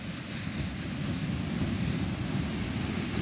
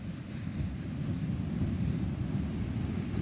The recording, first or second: first